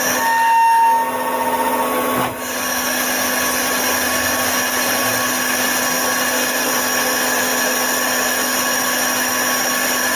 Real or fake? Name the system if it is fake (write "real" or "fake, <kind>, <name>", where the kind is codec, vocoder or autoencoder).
real